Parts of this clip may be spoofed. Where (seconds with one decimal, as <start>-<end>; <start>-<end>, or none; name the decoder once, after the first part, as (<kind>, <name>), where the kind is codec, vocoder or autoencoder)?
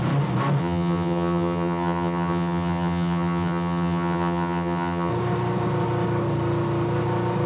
0.6-5.1 (vocoder, HiFi-GAN)